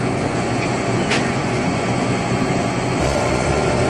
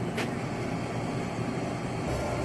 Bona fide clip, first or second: second